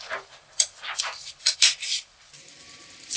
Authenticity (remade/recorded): remade